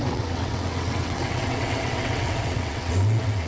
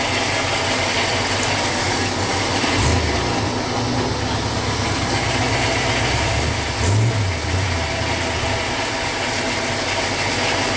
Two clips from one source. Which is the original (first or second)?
second